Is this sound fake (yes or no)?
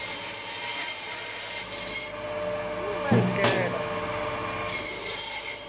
no